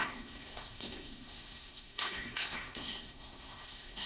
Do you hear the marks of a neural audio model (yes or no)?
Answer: yes